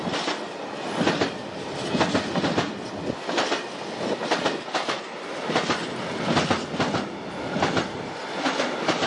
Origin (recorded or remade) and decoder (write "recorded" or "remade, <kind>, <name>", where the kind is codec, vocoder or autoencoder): recorded